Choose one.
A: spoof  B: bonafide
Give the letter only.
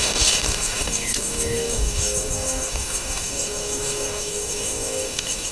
A